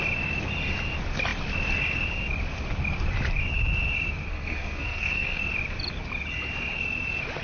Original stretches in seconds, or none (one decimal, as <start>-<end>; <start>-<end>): 0.0-4.3; 5.4-7.4